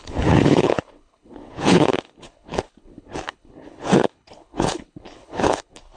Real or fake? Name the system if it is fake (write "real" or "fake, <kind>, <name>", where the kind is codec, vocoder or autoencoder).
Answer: fake, codec, HILCodec